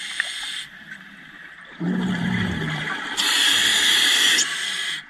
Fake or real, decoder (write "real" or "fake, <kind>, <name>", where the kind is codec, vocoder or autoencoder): real